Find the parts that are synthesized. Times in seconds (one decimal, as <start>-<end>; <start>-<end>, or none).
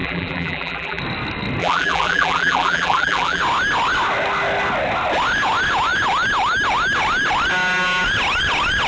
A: 0.0-1.0; 1.6-3.4